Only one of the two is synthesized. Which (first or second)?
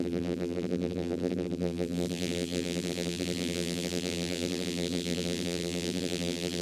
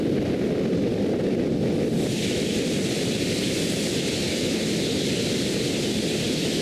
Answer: first